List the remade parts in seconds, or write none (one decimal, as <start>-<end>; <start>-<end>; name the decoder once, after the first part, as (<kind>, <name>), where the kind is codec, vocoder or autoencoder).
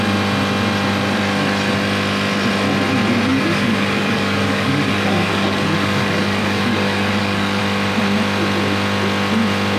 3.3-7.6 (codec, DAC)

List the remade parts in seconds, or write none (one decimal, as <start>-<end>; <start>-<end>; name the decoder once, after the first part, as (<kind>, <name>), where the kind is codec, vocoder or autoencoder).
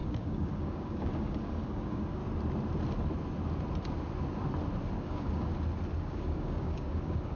0.0-2.2 (codec, DAC); 5.0-5.5; 6.0-7.4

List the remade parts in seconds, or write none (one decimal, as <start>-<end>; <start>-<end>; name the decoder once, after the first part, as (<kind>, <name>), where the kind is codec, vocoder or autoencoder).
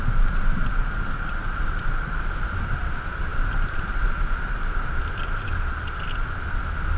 none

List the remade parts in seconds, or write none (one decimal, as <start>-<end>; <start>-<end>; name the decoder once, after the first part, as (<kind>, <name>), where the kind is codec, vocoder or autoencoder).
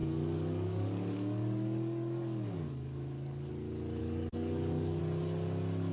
0.0-3.5 (codec, DAC); 4.0-5.0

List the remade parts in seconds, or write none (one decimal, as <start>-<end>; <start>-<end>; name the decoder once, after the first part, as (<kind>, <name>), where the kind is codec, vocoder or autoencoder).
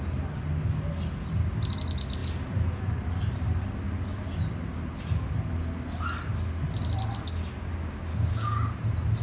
8.1-8.7 (codec, DAC)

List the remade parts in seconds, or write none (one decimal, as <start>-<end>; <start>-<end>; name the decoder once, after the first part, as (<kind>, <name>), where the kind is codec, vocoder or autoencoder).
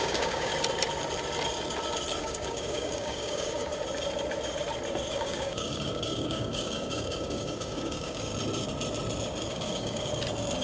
0.0-0.5 (codec, DAC); 2.2-3.7; 5.1-8.3; 9.5-10.1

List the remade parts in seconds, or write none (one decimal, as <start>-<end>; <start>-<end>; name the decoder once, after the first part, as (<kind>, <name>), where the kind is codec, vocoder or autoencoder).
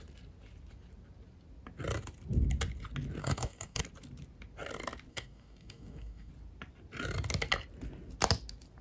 3.2-3.8 (codec, DAC); 5.1-6.3